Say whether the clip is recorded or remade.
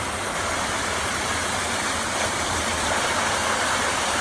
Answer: recorded